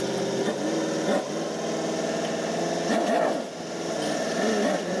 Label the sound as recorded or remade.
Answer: recorded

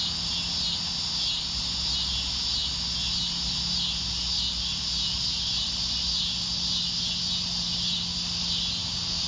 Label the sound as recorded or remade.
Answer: recorded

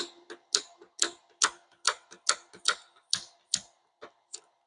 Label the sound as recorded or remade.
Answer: recorded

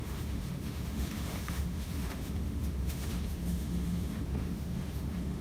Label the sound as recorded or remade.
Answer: remade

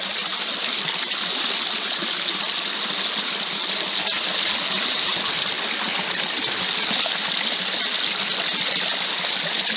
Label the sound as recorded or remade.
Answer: recorded